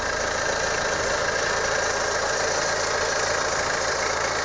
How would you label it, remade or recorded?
recorded